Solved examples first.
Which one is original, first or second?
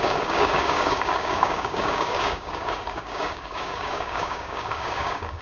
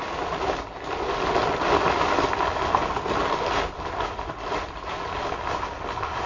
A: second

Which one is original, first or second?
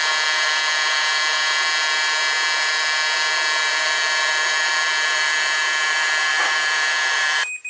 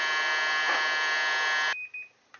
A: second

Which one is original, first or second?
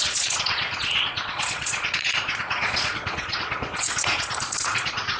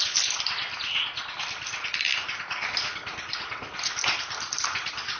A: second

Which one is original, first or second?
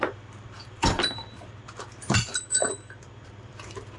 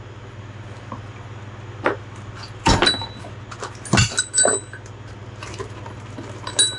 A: second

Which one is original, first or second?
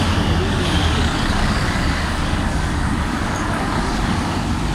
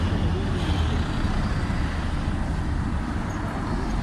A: second